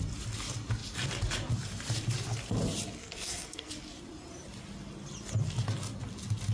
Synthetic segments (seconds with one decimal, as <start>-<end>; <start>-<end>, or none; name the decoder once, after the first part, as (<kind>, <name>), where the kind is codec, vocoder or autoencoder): 3.0-3.7 (codec, SNAC)